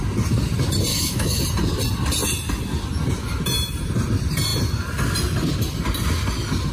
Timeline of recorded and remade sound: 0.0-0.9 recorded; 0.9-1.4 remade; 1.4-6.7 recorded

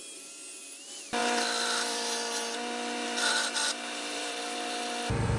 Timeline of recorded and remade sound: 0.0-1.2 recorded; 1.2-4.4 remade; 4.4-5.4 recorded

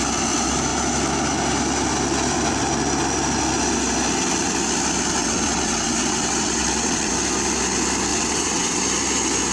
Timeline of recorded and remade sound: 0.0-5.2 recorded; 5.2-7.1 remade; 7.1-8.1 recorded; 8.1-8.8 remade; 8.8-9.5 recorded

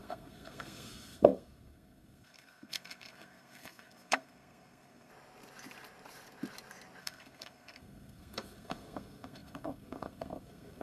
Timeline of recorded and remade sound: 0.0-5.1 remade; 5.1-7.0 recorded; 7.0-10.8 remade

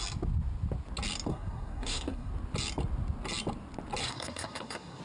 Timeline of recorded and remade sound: 0.0-1.3 recorded; 1.3-2.3 remade; 2.3-4.0 recorded; 4.0-5.0 remade